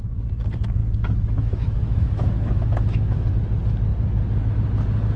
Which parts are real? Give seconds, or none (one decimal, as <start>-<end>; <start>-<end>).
0.0-0.8; 3.3-5.2